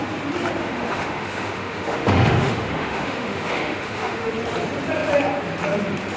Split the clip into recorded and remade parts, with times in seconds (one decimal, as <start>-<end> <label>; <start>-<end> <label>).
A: 0.0-0.6 recorded; 0.6-4.3 remade; 4.3-6.2 recorded